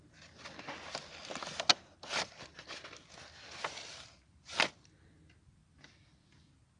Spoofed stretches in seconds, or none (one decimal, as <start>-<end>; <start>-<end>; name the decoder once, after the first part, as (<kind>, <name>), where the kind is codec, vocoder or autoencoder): 1.7-2.7 (vocoder, BigVGAN v2)